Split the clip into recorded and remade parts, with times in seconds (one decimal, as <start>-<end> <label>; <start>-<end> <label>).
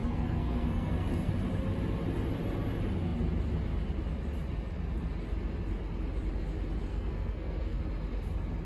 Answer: 0.0-1.3 remade; 1.3-6.9 recorded; 6.9-7.8 remade; 7.8-8.7 recorded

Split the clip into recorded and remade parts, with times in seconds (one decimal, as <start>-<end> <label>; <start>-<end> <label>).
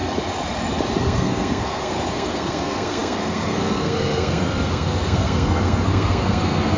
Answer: 0.0-1.0 recorded; 1.0-6.8 remade